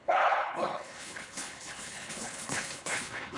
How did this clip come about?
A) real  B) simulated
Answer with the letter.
B